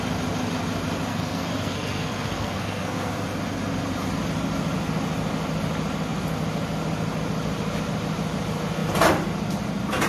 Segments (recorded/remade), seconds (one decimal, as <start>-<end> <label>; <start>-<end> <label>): 0.0-1.1 recorded; 1.1-3.1 remade; 3.1-10.1 recorded